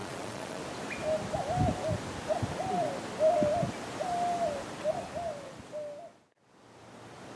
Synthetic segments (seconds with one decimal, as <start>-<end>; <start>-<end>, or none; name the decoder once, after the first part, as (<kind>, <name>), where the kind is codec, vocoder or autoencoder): 0.0-0.6 (vocoder, Vocos)